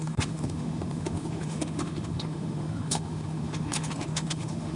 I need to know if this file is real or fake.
fake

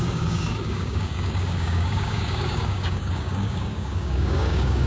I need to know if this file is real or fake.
fake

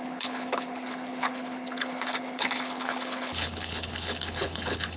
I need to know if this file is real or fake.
fake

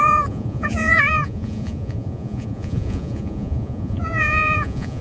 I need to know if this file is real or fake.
fake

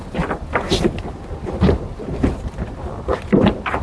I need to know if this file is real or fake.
real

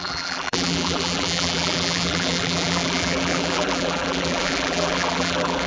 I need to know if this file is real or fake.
fake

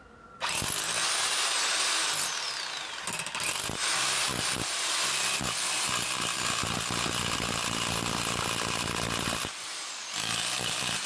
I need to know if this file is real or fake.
real